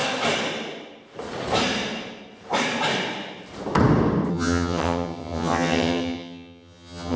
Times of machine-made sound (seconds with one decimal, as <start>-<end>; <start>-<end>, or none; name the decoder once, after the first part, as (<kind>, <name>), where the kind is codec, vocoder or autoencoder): 4.3-7.2 (vocoder, HiFi-GAN)